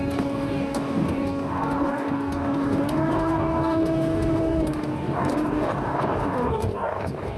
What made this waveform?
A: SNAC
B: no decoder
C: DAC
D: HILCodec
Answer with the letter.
C